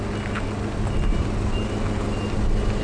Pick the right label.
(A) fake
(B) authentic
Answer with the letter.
B